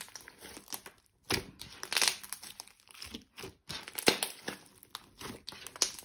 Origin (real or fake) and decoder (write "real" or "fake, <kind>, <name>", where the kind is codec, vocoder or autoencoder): real